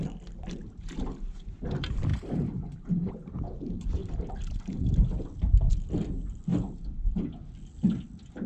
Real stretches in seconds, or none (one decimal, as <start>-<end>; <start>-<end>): 0.0-2.1; 3.1-4.0; 5.0-6.5; 7.3-8.5